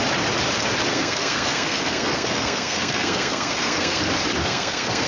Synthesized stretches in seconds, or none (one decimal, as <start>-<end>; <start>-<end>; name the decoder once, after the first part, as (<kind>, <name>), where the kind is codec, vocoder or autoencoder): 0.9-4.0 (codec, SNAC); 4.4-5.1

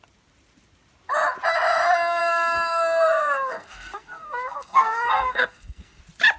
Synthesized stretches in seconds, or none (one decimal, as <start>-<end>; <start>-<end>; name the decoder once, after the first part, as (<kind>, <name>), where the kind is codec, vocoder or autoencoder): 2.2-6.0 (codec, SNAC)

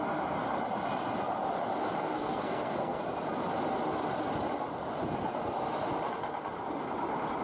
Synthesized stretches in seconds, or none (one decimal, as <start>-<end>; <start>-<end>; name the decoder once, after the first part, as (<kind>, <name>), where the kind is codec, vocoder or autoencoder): 2.0-3.0 (codec, SNAC)